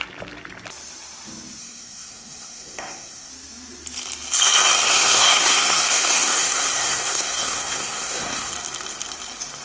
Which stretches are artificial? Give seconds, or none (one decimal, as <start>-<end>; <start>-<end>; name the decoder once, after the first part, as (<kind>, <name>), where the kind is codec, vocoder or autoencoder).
1.6-3.3 (codec, SNAC); 4.9-8.5